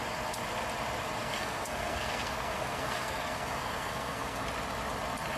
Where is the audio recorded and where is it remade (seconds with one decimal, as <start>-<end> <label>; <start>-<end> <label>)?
0.0-1.2 recorded; 1.2-4.4 remade; 4.4-5.4 recorded